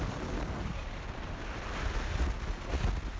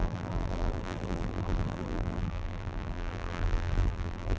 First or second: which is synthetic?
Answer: second